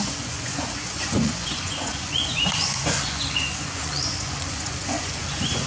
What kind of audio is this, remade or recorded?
remade